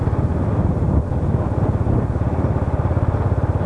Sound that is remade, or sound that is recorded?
recorded